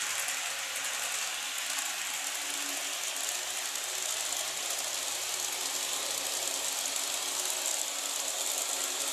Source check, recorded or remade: recorded